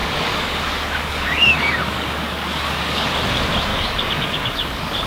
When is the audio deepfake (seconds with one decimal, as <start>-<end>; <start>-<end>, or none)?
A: 0.0-3.1; 3.7-5.1